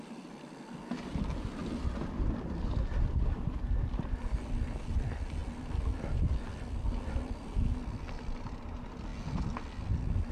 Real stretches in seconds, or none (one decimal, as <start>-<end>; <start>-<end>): 0.0-10.3